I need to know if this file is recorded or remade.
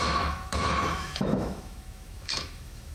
remade